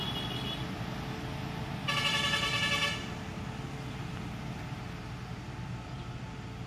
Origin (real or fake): real